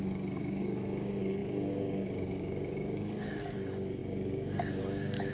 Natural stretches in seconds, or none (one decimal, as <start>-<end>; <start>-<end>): none